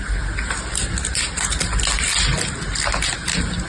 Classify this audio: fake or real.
real